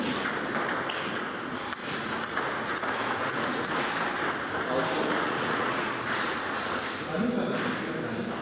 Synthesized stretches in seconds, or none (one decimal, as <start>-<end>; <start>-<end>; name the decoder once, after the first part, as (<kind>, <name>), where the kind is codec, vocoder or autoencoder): 1.8-3.7 (vocoder, Vocos); 5.0-7.2